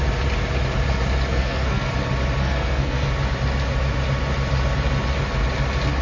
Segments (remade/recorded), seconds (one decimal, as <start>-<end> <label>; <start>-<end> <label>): 0.0-1.3 recorded; 1.3-1.9 remade; 1.9-2.4 recorded; 2.4-3.1 remade; 3.1-6.0 recorded